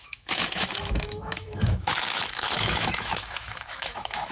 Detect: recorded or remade remade